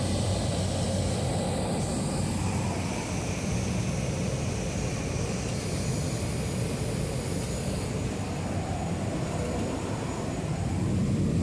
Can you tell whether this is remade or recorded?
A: recorded